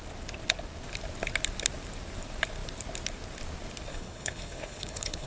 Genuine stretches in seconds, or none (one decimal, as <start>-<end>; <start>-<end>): 0.0-3.9